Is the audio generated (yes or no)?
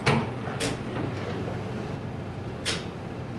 no